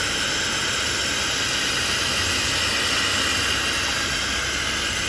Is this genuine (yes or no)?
yes